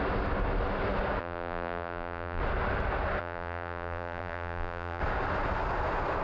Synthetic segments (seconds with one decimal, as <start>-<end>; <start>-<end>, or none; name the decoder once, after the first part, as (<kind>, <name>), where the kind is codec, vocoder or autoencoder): 1.2-2.4 (vocoder, BigVGAN v2); 3.2-5.0